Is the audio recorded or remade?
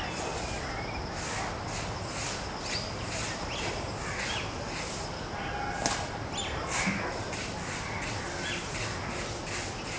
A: recorded